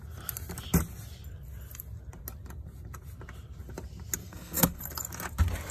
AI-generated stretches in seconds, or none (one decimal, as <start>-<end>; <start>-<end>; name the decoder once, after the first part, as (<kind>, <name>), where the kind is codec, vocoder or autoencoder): 4.2-4.8 (codec, SNAC)